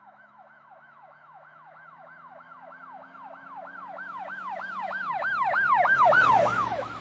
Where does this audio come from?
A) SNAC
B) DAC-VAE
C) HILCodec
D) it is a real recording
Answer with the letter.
B